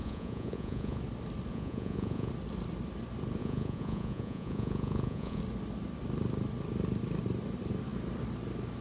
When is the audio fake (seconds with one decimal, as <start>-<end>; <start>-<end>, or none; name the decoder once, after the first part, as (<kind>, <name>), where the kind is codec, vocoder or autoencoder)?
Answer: 0.0-1.0 (vocoder, Vocos); 1.5-2.3; 3.4-5.4